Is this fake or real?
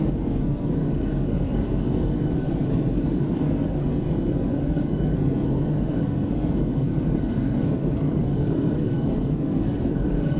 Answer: fake